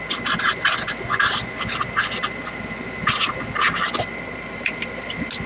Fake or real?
real